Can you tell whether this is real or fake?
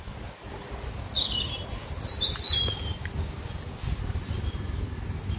real